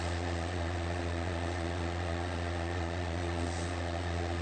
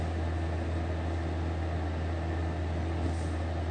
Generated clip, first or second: first